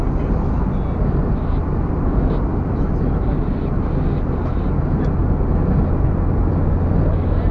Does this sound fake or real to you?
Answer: real